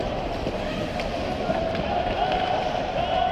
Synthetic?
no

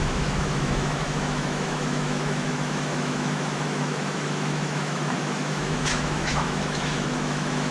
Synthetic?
yes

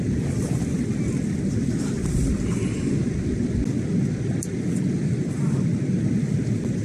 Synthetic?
no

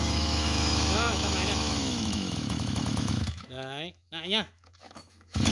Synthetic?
yes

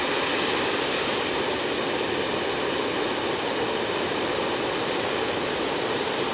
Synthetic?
no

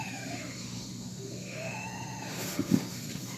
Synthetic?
yes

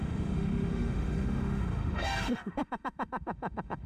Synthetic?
yes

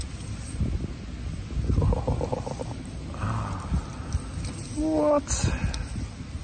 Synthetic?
no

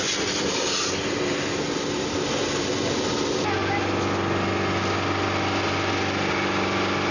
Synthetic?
no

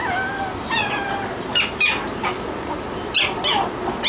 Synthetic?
no